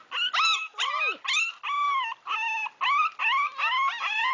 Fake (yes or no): no